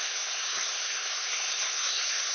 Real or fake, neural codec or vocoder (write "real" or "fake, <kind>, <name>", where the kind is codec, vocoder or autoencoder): fake, codec, SNAC